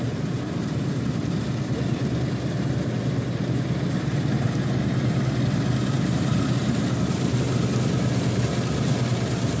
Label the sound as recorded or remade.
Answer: recorded